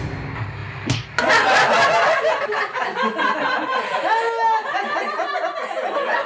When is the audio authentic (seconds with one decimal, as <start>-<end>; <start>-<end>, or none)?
0.0-6.3